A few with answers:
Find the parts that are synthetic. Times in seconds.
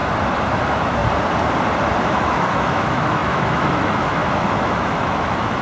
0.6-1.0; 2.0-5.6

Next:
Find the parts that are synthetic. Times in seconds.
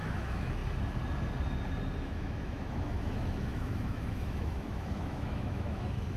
0.0-0.6; 2.0-6.2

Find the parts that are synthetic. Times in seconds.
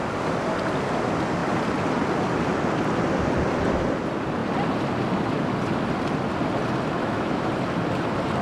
7.0-7.5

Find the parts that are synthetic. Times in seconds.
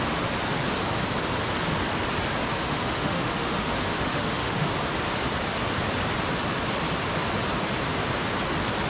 2.5-4.7